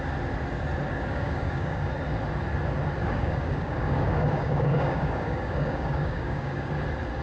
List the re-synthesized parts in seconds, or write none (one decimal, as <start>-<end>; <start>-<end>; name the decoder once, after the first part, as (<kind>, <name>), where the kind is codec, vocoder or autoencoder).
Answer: 0.9-1.9 (codec, DAC); 3.0-6.7